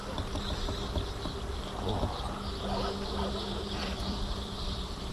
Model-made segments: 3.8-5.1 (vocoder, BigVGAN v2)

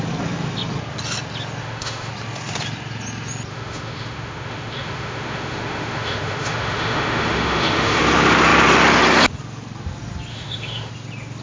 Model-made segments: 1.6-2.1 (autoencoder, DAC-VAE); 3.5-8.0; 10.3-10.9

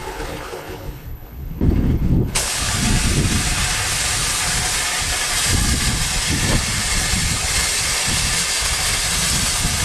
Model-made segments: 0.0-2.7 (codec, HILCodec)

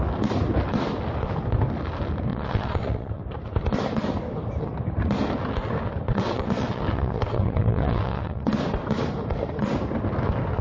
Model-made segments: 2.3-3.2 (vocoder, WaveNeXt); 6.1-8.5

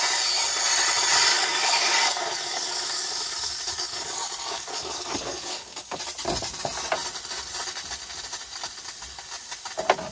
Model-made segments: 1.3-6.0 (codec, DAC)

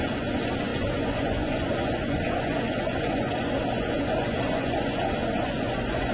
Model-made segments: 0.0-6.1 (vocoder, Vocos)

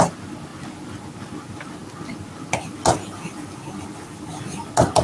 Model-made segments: none

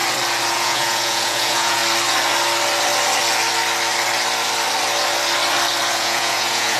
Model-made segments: 0.5-1.8 (vocoder, Vocos); 5.9-6.8